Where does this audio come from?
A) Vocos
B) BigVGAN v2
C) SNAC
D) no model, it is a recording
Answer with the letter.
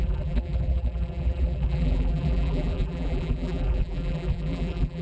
B